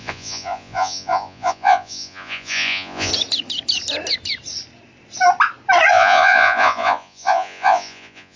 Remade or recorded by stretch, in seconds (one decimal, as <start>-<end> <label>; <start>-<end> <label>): 0.0-3.1 remade; 3.1-5.9 recorded; 5.9-8.4 remade